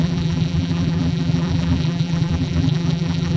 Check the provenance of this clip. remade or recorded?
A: remade